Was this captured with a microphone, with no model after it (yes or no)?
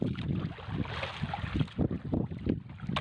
yes